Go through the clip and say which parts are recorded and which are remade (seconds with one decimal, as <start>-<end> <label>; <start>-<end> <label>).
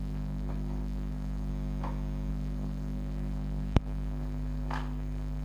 0.0-1.5 remade; 1.5-2.3 recorded; 2.3-5.4 remade